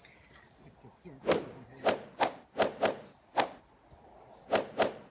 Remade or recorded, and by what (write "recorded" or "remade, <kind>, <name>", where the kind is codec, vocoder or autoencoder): recorded